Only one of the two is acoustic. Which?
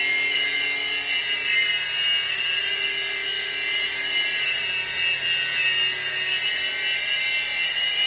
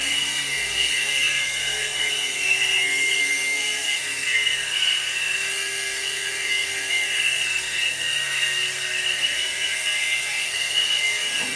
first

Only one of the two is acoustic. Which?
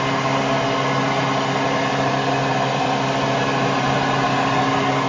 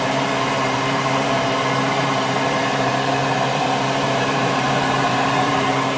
first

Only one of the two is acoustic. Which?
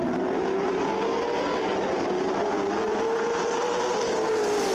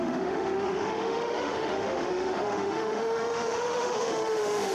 first